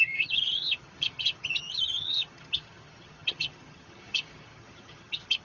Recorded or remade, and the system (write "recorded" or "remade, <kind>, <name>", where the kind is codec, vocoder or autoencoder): remade, vocoder, HiFi-GAN